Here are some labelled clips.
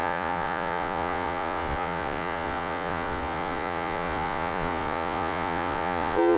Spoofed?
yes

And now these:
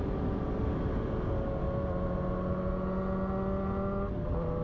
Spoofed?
no